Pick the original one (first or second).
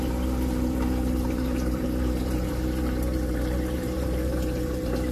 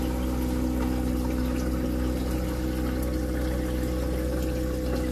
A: second